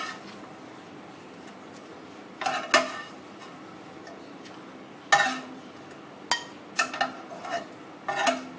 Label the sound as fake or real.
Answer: real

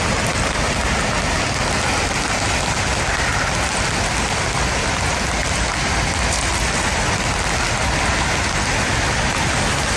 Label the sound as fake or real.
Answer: real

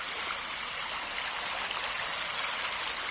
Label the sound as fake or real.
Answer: real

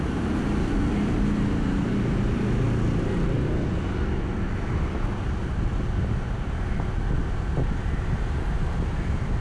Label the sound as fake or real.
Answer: real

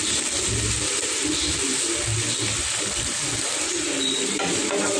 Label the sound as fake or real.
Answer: real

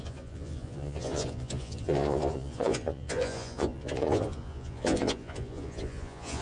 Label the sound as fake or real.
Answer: fake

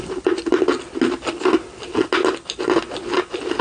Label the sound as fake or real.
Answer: real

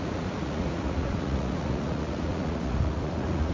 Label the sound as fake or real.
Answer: fake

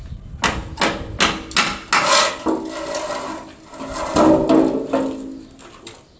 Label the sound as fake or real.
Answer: real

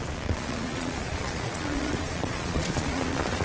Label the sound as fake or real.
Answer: fake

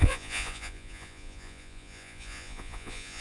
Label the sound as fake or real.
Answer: fake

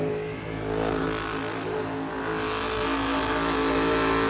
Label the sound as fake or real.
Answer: real